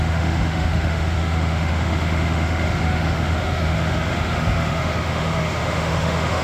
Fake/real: fake